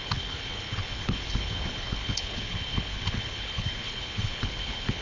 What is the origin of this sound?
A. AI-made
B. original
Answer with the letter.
A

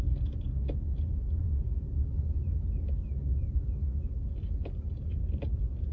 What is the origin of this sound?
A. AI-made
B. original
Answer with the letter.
B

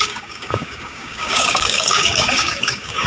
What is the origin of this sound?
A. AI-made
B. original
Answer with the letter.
A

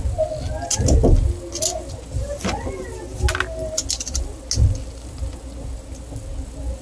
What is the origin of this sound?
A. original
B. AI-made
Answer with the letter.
A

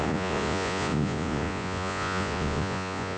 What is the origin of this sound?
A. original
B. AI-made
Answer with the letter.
B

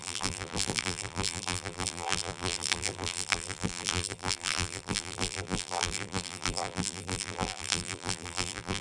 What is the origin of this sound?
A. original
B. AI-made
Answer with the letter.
B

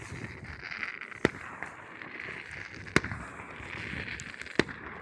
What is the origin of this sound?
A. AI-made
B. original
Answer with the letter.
B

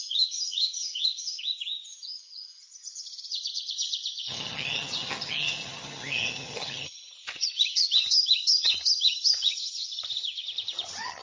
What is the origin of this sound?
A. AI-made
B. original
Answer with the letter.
A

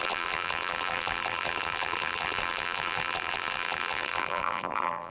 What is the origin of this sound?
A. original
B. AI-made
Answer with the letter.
B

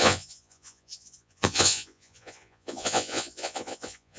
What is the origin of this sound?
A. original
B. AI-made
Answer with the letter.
B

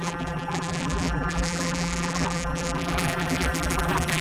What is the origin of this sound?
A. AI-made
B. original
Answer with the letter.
A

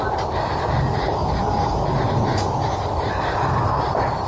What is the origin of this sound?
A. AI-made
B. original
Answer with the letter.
B